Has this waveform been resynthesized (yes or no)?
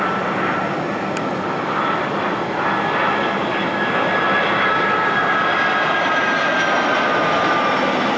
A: no